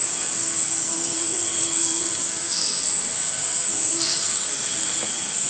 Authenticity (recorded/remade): remade